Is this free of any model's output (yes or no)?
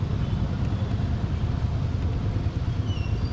yes